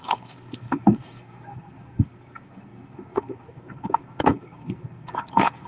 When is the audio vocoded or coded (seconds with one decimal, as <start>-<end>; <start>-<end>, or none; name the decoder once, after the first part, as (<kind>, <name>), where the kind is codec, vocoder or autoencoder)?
0.0-5.7 (codec, SNAC)